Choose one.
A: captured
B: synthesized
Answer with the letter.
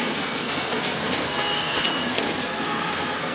B